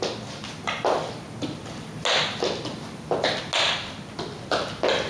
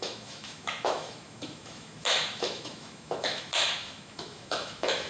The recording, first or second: first